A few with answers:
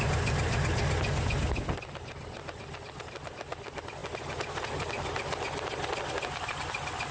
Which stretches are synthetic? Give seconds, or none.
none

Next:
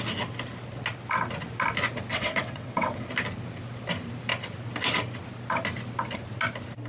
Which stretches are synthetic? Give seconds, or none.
2.1-3.1 (vocoder, WaveNeXt)

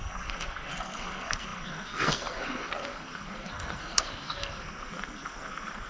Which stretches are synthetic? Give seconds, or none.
0.0-5.9 (codec, SNAC)

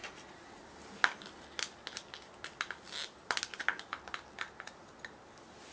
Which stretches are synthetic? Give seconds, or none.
none

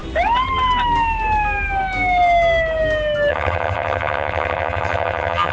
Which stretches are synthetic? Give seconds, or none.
3.3-5.5 (vocoder, HiFi-GAN)